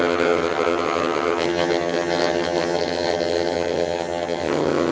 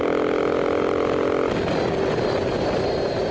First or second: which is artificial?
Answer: first